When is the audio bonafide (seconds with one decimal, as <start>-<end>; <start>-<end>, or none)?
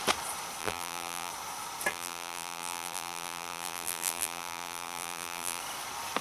0.0-0.6; 1.3-1.9; 5.6-6.2